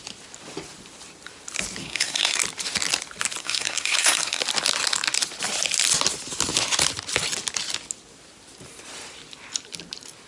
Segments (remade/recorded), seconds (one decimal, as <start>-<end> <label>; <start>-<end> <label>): 0.0-1.8 recorded; 1.8-2.4 remade; 2.4-3.4 recorded; 3.4-4.4 remade; 4.4-10.3 recorded